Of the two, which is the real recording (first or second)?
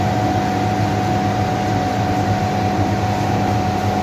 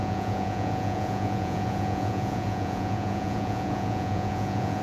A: first